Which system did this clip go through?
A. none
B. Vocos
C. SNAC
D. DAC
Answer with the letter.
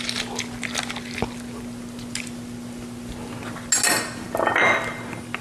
A